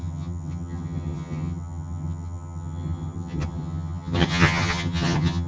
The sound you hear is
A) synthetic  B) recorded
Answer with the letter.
A